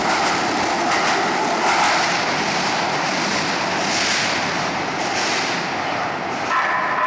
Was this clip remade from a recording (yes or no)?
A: no